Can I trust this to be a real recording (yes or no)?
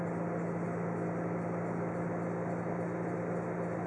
yes